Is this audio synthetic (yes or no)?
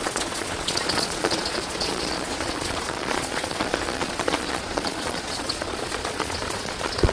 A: yes